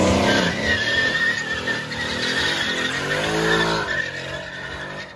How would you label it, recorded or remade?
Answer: recorded